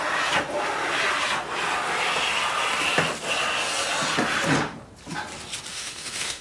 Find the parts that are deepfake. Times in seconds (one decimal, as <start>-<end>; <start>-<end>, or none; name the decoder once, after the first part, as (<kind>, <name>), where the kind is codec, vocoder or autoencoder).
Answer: 5.7-6.4 (autoencoder, DAC-VAE)